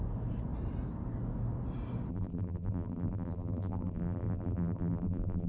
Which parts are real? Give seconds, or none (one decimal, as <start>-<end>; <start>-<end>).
0.0-2.1